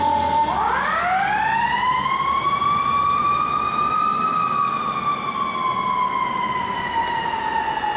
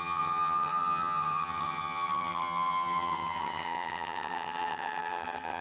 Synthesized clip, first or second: second